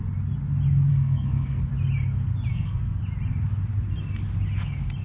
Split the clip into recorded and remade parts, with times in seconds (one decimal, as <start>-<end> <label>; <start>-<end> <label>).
0.0-0.9 recorded; 0.9-1.6 remade; 1.6-2.5 recorded; 2.5-3.0 remade; 3.0-5.0 recorded